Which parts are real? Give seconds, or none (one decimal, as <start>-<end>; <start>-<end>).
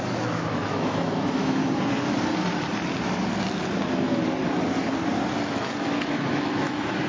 1.6-5.5